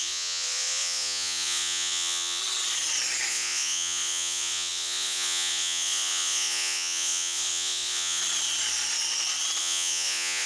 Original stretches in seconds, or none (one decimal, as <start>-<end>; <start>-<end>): 2.4-3.3; 8.2-9.6